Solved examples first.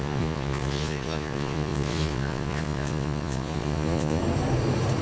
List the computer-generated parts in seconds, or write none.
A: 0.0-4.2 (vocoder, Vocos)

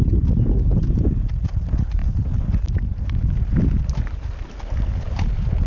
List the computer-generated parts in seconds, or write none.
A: none